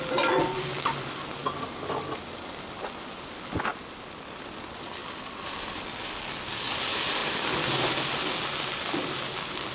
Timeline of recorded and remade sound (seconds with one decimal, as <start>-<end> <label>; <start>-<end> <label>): 0.0-9.7 recorded

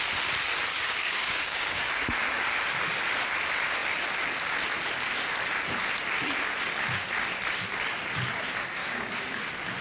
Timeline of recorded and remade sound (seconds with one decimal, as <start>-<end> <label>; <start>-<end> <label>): 0.0-0.7 recorded; 0.7-2.0 remade; 2.0-8.8 recorded; 8.8-9.4 remade; 9.4-9.8 recorded

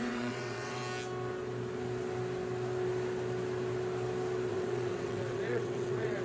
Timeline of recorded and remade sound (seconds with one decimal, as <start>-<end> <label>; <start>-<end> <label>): 0.0-0.8 remade; 0.8-4.5 recorded; 4.5-6.2 remade

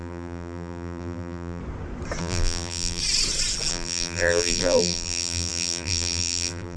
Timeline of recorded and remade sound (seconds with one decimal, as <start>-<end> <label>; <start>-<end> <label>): 0.0-1.6 remade; 1.6-2.2 recorded; 2.2-3.0 remade; 3.0-3.7 recorded; 3.7-6.8 remade

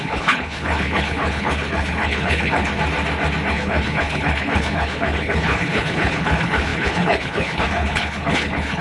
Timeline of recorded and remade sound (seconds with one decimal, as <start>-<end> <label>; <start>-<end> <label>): 0.0-2.7 remade; 2.7-3.5 recorded; 3.5-8.8 remade